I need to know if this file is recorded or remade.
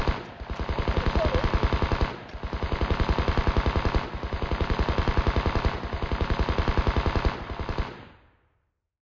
recorded